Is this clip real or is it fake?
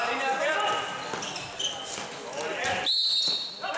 real